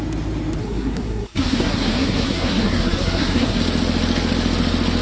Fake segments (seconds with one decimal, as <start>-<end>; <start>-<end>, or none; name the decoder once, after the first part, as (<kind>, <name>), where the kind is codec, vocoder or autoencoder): 0.6-3.6 (codec, SNAC)